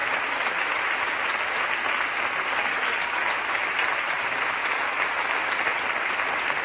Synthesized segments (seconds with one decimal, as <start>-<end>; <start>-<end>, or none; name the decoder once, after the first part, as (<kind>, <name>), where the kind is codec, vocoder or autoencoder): none